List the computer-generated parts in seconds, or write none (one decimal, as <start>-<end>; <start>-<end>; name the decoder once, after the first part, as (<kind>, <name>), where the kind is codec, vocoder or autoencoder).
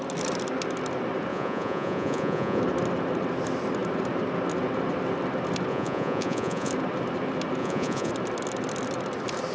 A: 1.3-2.6 (vocoder, Vocos); 5.7-6.7; 7.6-8.1